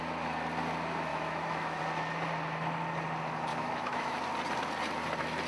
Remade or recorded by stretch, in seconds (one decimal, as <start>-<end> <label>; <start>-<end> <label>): 0.0-1.1 recorded; 1.1-1.8 remade; 1.8-3.5 recorded; 3.5-4.2 remade; 4.2-5.5 recorded